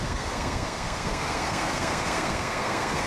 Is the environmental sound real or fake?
fake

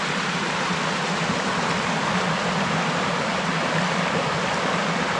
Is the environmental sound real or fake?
real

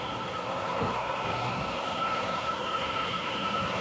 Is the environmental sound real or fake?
fake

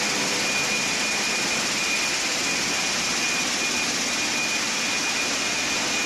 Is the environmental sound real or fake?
real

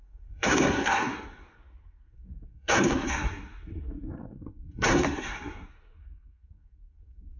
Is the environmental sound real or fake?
fake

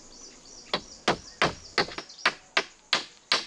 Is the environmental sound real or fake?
real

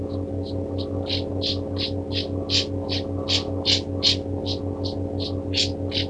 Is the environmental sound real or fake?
real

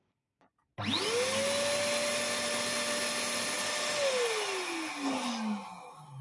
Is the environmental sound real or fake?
real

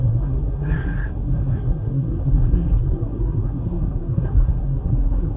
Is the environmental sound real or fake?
fake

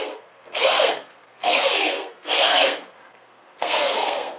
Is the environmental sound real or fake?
fake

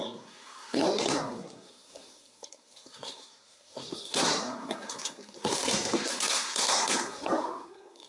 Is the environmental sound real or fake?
fake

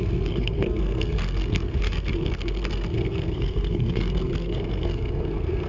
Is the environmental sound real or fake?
fake